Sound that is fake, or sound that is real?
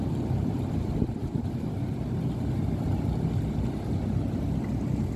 real